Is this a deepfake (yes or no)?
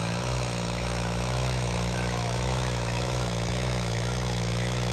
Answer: yes